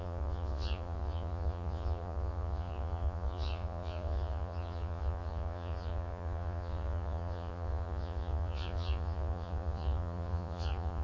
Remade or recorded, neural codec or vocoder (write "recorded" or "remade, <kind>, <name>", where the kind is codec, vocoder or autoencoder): remade, vocoder, Vocos